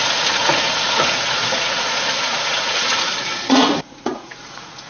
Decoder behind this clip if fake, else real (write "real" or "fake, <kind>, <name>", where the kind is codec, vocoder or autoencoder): fake, vocoder, Vocos